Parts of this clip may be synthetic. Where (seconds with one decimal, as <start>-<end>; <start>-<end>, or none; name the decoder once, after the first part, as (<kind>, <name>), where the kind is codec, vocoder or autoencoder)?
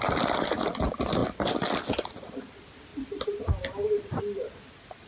none